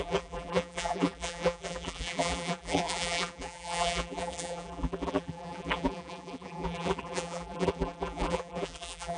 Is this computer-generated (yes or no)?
yes